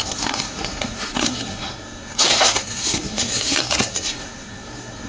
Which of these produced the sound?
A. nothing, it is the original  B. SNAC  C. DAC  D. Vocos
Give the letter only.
B